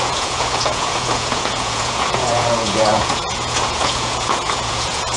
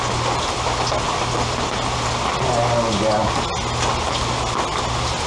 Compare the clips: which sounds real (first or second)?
second